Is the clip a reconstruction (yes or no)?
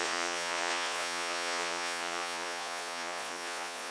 yes